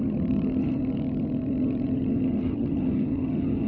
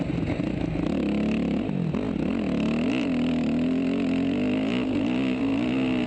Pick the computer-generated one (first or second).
first